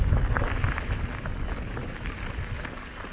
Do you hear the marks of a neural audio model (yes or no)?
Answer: no